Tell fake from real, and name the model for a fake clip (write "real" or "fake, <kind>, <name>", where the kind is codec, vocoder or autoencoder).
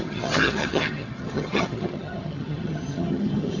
fake, vocoder, HiFi-GAN